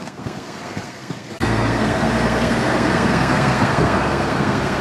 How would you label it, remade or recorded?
remade